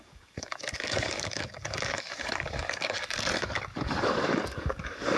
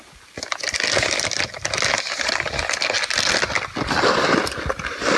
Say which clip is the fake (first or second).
first